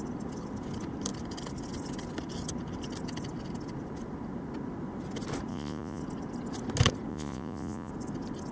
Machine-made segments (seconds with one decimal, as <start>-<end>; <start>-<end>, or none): 5.5-6.0; 7.1-7.9